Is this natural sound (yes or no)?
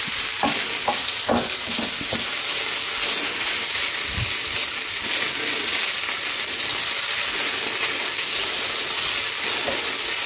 yes